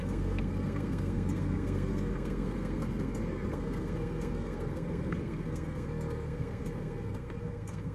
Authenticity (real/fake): fake